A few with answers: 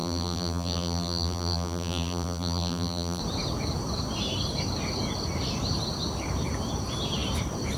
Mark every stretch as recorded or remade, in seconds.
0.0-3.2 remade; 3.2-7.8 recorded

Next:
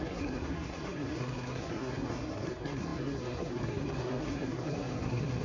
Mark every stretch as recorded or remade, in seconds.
0.0-5.4 remade

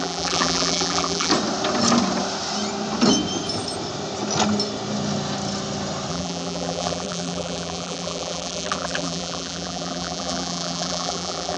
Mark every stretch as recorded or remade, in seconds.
0.0-1.3 remade; 1.3-6.1 recorded; 6.1-11.6 remade

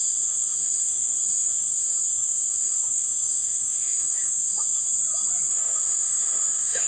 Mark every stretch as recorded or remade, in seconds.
0.0-4.9 remade; 4.9-5.5 recorded; 5.5-6.9 remade